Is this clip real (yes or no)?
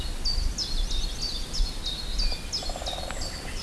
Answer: yes